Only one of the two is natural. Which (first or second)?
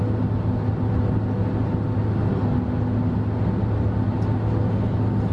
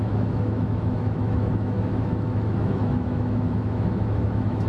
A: first